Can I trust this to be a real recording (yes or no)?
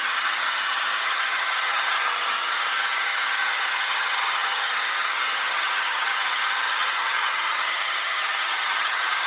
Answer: no